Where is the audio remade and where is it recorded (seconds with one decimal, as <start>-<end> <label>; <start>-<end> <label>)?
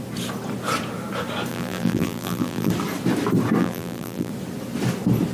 0.0-1.5 recorded; 1.5-2.7 remade; 2.7-3.6 recorded; 3.6-4.3 remade; 4.3-5.3 recorded